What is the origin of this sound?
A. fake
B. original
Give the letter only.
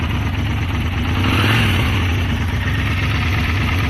B